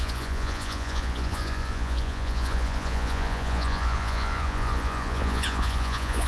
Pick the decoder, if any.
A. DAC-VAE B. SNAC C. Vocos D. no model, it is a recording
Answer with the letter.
C